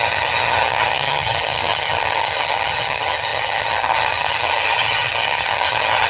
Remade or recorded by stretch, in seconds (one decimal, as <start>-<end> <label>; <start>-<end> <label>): 0.0-6.1 remade